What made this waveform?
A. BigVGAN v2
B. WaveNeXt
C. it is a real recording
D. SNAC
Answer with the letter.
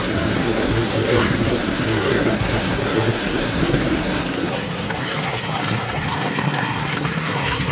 D